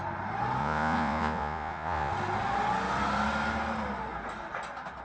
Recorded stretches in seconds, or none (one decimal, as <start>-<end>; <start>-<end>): 0.0-0.6; 2.1-5.0